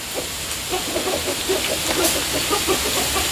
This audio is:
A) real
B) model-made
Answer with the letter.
A